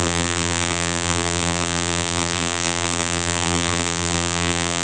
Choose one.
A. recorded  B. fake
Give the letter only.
B